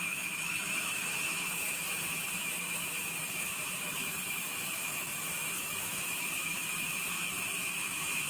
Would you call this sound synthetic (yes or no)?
yes